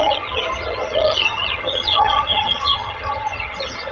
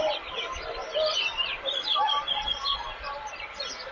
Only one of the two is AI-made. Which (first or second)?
first